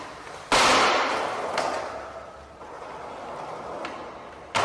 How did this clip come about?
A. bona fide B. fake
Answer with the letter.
A